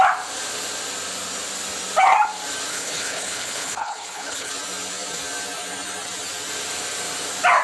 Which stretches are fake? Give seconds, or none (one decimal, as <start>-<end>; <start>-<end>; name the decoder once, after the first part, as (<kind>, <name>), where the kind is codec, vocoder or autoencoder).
2.7-4.5 (codec, HILCodec)